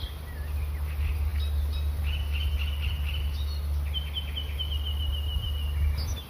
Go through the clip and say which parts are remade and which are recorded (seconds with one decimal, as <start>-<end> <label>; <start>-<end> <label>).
0.0-6.3 recorded